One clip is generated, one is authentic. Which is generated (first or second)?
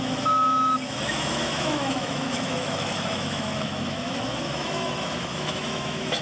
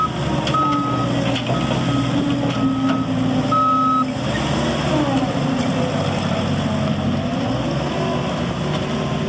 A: first